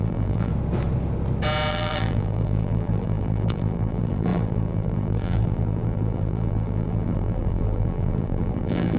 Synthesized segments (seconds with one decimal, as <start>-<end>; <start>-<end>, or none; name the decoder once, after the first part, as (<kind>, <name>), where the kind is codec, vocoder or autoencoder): 0.0-0.5 (vocoder, BigVGAN v2); 1.7-9.0